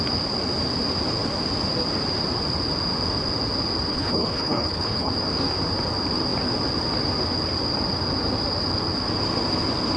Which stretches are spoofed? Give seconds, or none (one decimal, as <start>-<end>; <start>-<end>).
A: 3.9-5.1